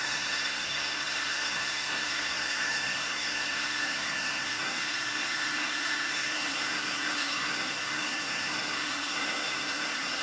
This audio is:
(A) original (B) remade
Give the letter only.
B